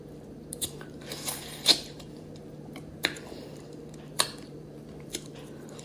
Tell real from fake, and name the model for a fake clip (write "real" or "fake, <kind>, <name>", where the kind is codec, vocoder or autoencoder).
fake, vocoder, BigVGAN v2